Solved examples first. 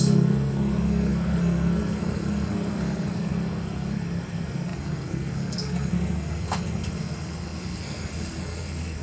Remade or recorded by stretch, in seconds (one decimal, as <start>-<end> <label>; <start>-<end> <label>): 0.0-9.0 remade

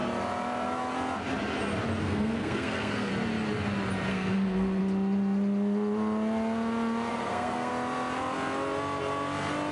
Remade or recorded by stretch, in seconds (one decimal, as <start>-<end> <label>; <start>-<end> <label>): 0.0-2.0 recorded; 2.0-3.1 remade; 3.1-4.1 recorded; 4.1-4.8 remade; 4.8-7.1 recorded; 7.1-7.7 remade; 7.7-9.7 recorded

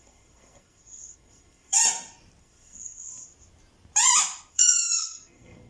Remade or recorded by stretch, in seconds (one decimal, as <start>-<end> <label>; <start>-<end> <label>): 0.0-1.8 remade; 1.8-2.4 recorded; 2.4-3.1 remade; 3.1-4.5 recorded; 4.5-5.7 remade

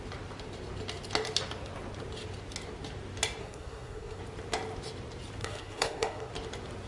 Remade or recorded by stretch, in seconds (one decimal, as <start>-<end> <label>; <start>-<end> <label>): 0.0-3.4 recorded; 3.4-4.2 remade; 4.2-5.4 recorded; 5.4-6.3 remade; 6.3-6.9 recorded

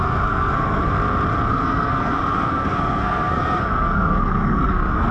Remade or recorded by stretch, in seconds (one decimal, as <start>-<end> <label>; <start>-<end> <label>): 0.0-0.9 remade; 0.9-1.5 recorded; 1.5-5.1 remade